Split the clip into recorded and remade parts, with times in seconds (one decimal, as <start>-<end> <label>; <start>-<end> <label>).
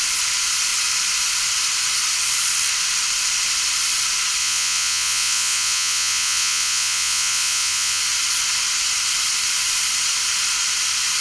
0.0-4.4 recorded; 4.4-8.0 remade; 8.0-11.2 recorded